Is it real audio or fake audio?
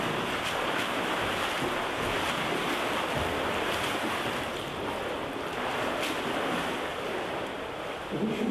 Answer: real